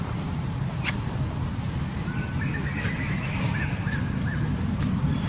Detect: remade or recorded recorded